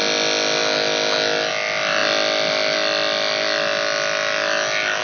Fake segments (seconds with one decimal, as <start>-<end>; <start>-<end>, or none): none